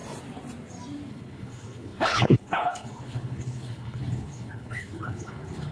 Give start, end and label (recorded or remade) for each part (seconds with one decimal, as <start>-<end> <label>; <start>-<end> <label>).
0.0-1.1 recorded; 1.1-5.7 remade